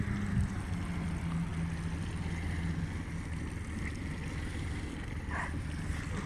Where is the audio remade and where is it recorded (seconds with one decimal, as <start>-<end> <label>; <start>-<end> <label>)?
0.0-6.3 recorded